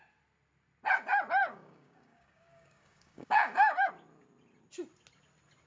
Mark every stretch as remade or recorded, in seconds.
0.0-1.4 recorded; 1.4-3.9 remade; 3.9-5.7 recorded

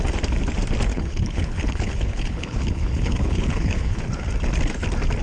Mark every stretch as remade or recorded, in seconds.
0.0-0.9 recorded; 0.9-4.0 remade; 4.0-5.2 recorded

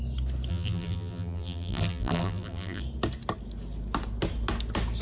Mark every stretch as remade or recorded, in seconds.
0.0-0.5 recorded; 0.5-2.8 remade; 2.8-5.0 recorded

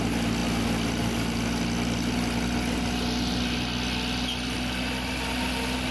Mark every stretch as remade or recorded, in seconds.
0.0-5.9 recorded

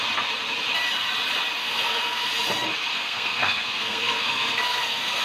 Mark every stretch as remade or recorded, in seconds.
0.0-1.6 recorded; 1.6-2.3 remade; 2.3-2.9 recorded; 2.9-5.2 remade